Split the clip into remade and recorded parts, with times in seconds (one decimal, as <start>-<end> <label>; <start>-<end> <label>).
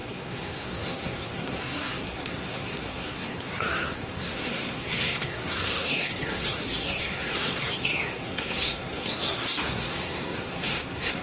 0.0-11.2 remade